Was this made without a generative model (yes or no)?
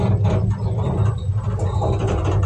yes